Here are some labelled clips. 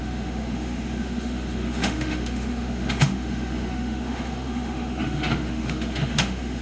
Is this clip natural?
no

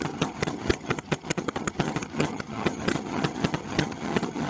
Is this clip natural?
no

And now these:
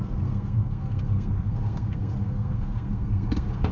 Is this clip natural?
no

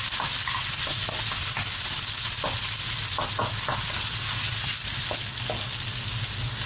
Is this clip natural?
yes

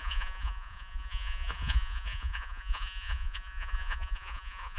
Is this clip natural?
no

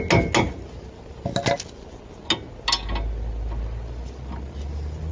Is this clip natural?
yes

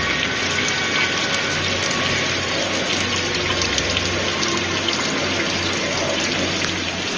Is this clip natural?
yes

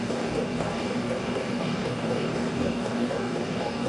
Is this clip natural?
no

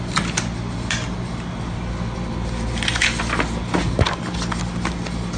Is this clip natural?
yes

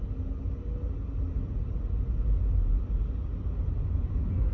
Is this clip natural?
yes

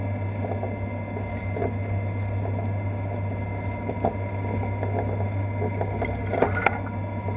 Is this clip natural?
yes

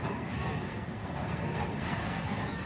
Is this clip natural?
no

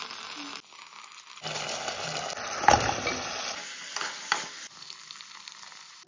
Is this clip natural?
yes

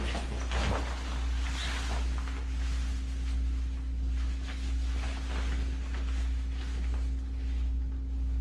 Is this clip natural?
yes